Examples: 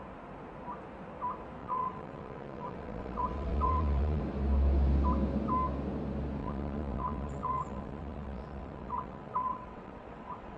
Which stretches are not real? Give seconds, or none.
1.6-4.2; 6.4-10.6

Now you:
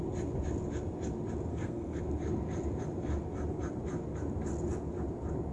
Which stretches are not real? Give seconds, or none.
1.5-2.0

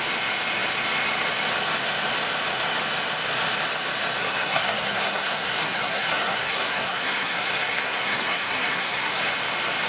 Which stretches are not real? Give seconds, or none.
4.2-9.2

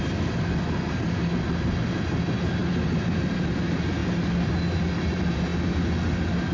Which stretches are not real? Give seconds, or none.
none

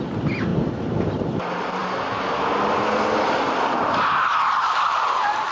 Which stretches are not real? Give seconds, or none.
none

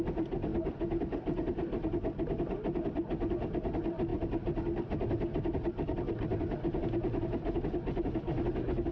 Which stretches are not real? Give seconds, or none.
none

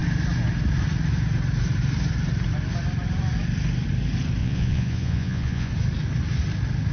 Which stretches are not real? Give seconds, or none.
4.4-5.7

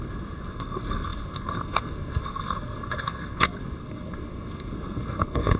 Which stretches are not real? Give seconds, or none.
0.0-5.6